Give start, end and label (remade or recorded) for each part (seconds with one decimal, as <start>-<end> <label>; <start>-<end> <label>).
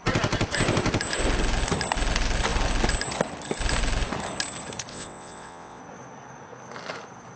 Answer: 0.0-4.9 recorded; 4.9-5.8 remade; 5.8-7.4 recorded